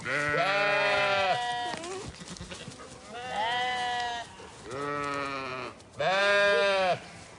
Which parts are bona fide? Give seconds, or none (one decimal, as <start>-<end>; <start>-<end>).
0.0-7.4